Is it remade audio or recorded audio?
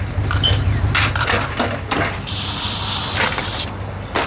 recorded